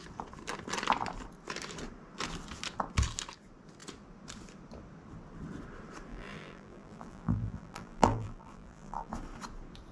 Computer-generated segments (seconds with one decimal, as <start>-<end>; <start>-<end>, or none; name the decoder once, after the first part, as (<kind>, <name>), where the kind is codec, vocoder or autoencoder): 6.1-9.1 (vocoder, BigVGAN v2)